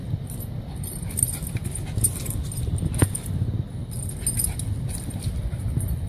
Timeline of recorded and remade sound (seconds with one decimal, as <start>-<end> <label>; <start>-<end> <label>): 0.0-6.1 recorded

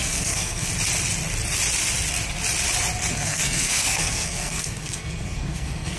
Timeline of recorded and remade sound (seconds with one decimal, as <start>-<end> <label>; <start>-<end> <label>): 0.0-0.7 remade; 0.7-3.1 recorded; 3.1-6.0 remade

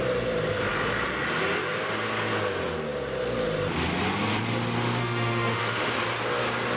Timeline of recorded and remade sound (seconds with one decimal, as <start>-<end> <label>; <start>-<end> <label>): 0.0-5.0 recorded; 5.0-6.0 remade; 6.0-6.8 recorded

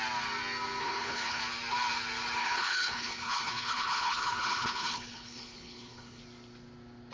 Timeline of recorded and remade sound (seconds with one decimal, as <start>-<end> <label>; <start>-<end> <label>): 0.0-0.8 recorded; 0.8-1.4 remade; 1.4-2.4 recorded; 2.4-6.2 remade; 6.2-7.1 recorded

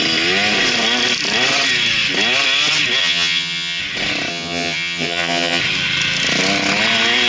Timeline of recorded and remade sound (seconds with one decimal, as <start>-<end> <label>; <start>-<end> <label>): 0.0-3.0 recorded; 3.0-3.8 remade; 3.8-4.3 recorded; 4.3-5.6 remade; 5.6-7.3 recorded

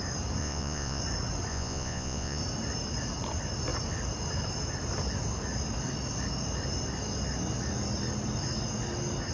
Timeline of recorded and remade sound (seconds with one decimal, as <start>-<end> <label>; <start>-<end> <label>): 0.0-0.4 recorded; 0.4-1.0 remade; 1.0-1.5 recorded; 1.5-2.4 remade; 2.4-9.3 recorded